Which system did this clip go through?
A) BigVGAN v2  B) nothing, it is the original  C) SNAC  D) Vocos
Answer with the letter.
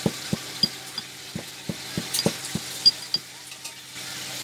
B